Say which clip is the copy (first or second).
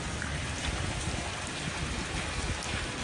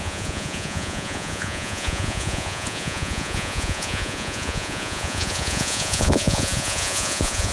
second